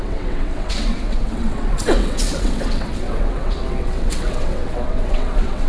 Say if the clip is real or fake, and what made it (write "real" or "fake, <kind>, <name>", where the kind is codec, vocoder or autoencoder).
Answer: fake, vocoder, WaveNeXt